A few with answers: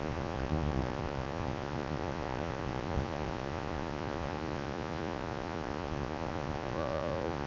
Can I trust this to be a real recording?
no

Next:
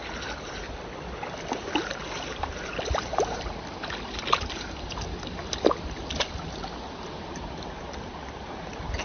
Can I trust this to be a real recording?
yes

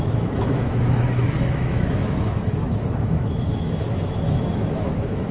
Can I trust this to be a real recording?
no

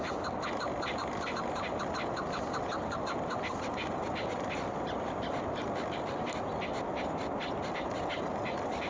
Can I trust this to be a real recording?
yes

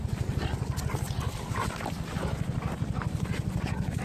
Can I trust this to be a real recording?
no